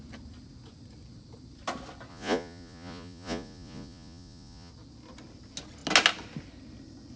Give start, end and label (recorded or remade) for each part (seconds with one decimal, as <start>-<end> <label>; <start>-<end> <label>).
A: 0.0-2.1 recorded; 2.1-4.7 remade; 4.7-7.2 recorded